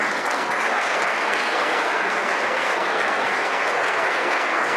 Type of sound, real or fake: fake